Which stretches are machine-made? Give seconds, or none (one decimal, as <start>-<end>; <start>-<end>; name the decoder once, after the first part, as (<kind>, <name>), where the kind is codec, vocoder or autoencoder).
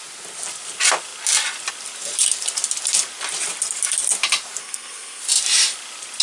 4.6-5.2 (codec, SNAC)